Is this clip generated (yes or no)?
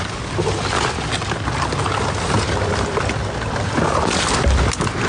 no